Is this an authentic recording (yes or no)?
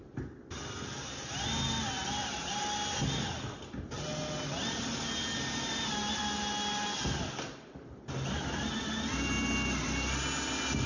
yes